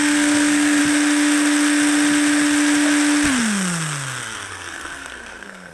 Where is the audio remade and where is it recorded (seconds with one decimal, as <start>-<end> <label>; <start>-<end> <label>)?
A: 0.0-0.8 remade; 0.8-4.2 recorded; 4.2-5.7 remade

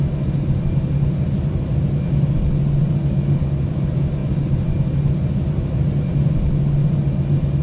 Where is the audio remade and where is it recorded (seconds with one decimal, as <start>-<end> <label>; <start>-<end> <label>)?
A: 0.0-3.0 recorded; 3.0-3.6 remade; 3.6-7.6 recorded

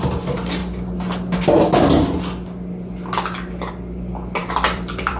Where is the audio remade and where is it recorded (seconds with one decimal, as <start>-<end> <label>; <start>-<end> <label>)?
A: 0.0-4.4 recorded; 4.4-5.2 remade

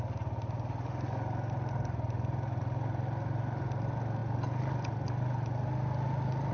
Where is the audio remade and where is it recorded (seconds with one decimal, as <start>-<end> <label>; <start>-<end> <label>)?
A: 0.0-6.5 recorded

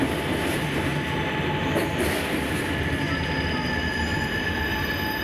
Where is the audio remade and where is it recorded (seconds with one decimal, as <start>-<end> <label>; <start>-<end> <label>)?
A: 0.0-5.2 recorded

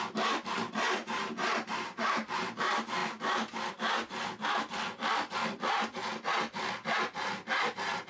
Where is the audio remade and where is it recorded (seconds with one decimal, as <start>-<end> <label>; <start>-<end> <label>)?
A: 0.0-1.0 recorded; 1.0-2.5 remade; 2.5-8.1 recorded

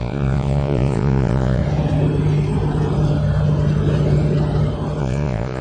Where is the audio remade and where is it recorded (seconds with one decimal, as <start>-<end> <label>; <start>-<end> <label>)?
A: 0.0-1.6 remade; 1.6-5.0 recorded; 5.0-5.6 remade